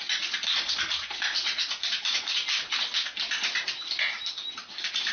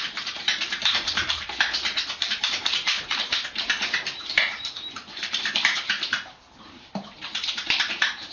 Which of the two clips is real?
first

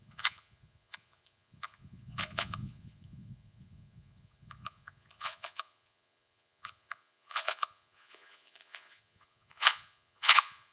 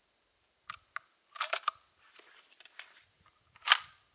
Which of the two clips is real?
second